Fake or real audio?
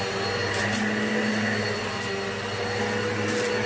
real